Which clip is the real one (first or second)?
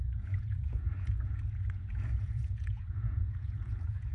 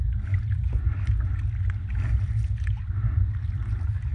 second